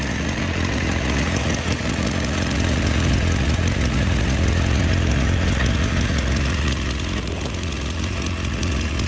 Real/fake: fake